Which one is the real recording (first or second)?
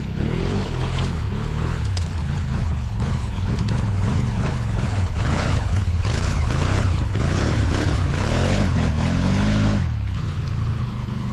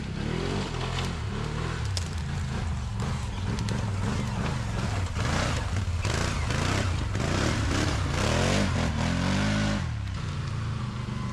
second